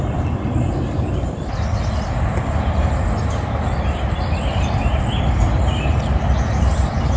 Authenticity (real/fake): real